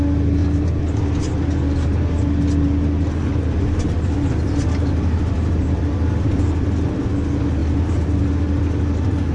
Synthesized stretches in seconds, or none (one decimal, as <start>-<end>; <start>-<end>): 0.4-1.3; 3.3-6.9; 7.6-8.3